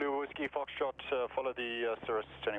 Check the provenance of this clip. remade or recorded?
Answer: recorded